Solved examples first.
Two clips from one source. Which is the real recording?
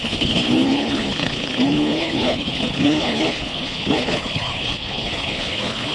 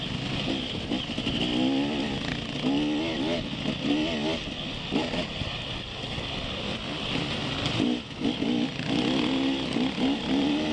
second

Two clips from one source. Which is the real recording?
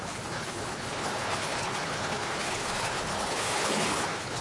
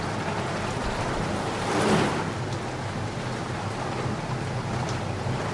second